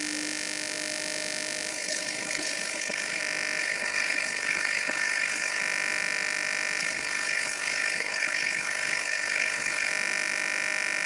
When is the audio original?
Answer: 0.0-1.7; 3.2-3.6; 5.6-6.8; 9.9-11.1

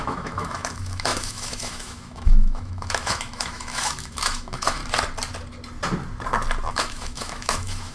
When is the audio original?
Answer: 4.8-6.7